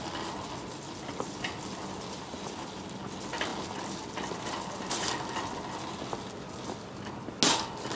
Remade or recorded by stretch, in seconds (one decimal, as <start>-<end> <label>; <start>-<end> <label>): 0.0-8.0 recorded